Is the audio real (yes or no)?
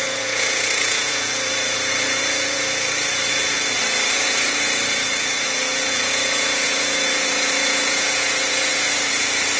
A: no